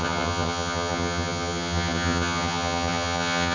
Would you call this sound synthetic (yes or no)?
yes